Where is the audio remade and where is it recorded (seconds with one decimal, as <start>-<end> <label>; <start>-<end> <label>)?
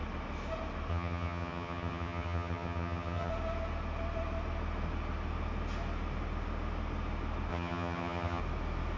0.0-0.9 recorded; 0.9-3.3 remade; 3.3-7.5 recorded; 7.5-8.4 remade; 8.4-9.0 recorded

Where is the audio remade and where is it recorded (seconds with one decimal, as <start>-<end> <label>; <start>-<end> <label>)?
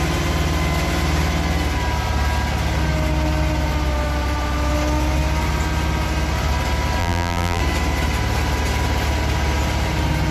0.0-7.0 recorded; 7.0-7.6 remade; 7.6-10.3 recorded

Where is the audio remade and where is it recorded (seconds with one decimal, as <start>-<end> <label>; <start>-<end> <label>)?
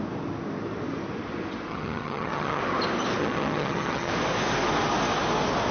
0.0-1.7 recorded; 1.7-2.6 remade; 2.6-3.2 recorded; 3.2-4.1 remade; 4.1-5.7 recorded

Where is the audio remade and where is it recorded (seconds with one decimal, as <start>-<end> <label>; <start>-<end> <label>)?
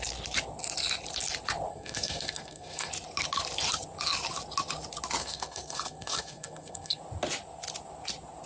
0.0-1.7 recorded; 1.7-2.9 remade; 2.9-5.2 recorded; 5.2-7.0 remade; 7.0-8.5 recorded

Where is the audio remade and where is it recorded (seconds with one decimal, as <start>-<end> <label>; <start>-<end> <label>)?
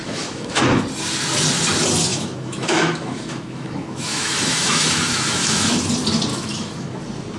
0.0-0.8 remade; 0.8-2.1 recorded; 2.1-5.7 remade; 5.7-6.3 recorded; 6.3-7.0 remade; 7.0-7.4 recorded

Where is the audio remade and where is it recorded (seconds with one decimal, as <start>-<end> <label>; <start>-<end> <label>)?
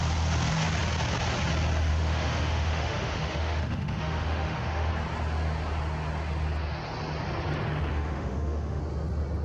0.0-1.9 recorded; 1.9-4.9 remade; 4.9-7.9 recorded; 7.9-8.8 remade; 8.8-9.4 recorded